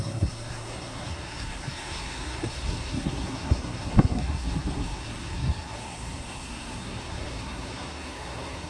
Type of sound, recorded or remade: remade